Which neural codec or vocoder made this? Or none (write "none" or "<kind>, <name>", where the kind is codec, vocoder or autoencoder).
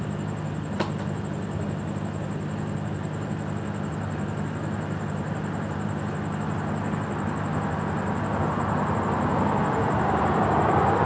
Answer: none